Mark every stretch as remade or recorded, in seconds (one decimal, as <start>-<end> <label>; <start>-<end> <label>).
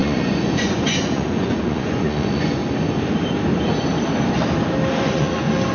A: 0.0-2.6 remade; 2.6-5.0 recorded; 5.0-5.7 remade